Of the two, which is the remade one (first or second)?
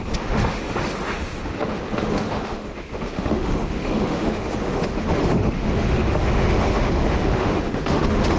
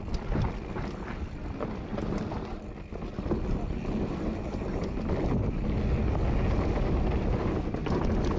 first